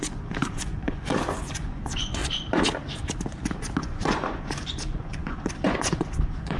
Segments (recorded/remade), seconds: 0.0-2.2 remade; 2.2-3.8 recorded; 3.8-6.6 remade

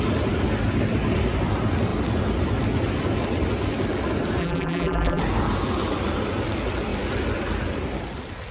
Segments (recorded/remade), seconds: 0.0-4.4 recorded; 4.4-5.2 remade; 5.2-8.5 recorded

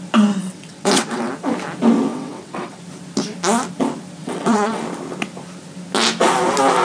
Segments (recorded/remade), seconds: 0.0-0.4 recorded; 0.4-1.3 remade; 1.3-2.1 recorded; 2.1-2.8 remade; 2.8-4.2 recorded; 4.2-4.8 remade; 4.8-6.8 recorded

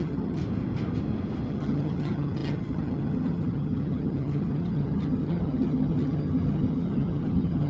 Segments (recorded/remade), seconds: 0.0-0.4 remade; 0.4-1.5 recorded; 1.5-7.7 remade

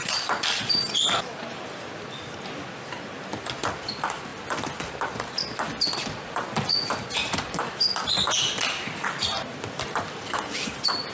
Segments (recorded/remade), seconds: 0.0-11.1 recorded

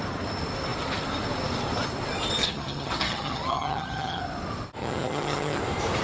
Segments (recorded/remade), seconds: 0.0-2.4 recorded; 2.4-4.2 remade; 4.2-4.8 recorded; 4.8-5.6 remade; 5.6-6.0 recorded

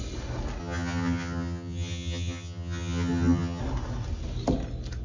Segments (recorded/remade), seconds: 0.0-0.6 recorded; 0.6-3.6 remade; 3.6-5.0 recorded

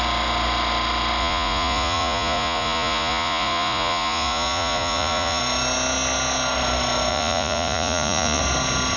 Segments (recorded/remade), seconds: 0.0-1.2 recorded; 1.2-5.4 remade; 5.4-7.1 recorded; 7.1-8.4 remade; 8.4-9.0 recorded